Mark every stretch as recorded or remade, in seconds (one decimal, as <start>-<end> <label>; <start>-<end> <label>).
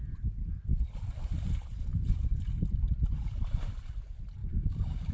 0.0-4.4 recorded; 4.4-5.1 remade